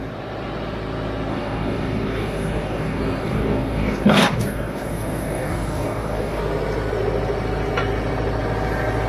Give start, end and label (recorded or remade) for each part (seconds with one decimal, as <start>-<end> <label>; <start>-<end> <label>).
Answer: 0.0-1.3 recorded; 1.3-6.4 remade; 6.4-9.1 recorded